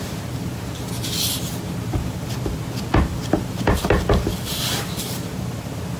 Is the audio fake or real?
real